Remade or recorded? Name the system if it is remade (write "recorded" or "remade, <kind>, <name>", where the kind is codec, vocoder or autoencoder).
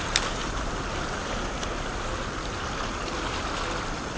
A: recorded